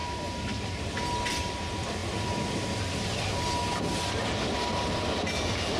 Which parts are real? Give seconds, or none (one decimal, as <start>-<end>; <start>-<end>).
0.0-5.8